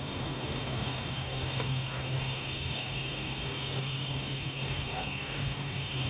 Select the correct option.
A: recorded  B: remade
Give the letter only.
B